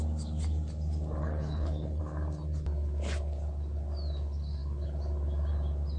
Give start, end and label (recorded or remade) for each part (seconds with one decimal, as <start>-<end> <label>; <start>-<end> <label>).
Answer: 0.0-1.2 recorded; 1.2-2.0 remade; 2.0-6.0 recorded